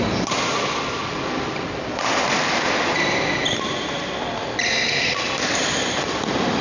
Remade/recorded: recorded